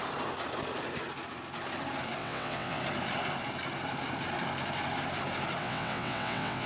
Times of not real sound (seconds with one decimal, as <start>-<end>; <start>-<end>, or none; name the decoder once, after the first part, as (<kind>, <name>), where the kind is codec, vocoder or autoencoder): 2.2-2.8 (vocoder, WaveNeXt); 5.6-6.7